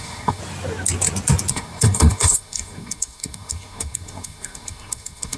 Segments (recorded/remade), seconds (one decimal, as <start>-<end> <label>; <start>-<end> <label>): 0.0-0.4 remade; 0.4-1.5 recorded; 1.5-5.4 remade